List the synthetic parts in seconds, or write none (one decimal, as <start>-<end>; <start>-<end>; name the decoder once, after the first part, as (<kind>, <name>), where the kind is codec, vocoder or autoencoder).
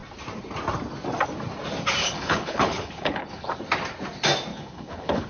2.0-3.5 (codec, HILCodec); 4.5-5.3